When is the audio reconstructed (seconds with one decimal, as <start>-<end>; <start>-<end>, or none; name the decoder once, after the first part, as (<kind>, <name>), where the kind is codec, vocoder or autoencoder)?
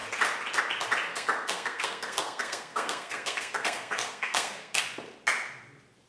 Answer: 1.1-4.8 (codec, SNAC)